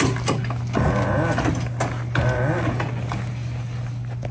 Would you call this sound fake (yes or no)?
no